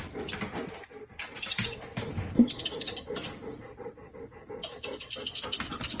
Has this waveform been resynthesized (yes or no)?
no